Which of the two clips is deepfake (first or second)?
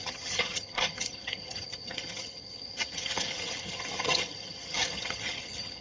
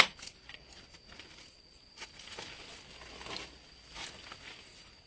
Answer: first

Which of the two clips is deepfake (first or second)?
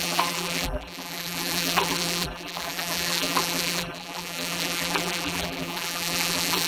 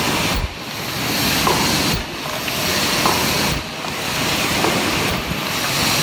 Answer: first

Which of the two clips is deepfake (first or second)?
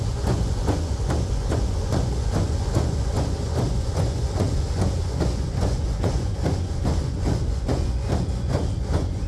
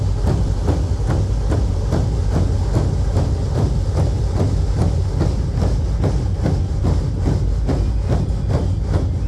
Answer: first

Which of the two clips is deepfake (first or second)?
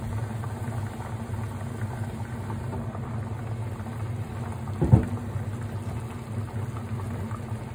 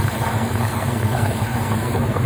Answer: second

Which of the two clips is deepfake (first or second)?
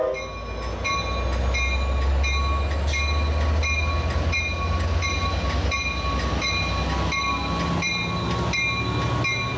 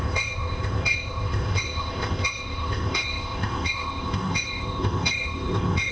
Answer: second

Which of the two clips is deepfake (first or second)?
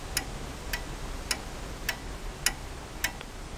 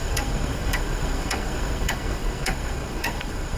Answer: second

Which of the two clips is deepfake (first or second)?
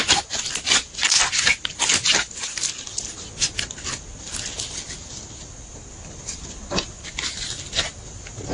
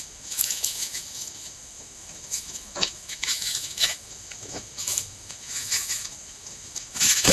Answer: second